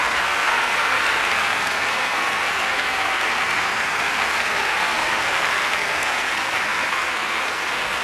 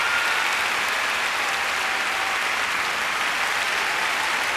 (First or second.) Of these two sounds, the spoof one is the first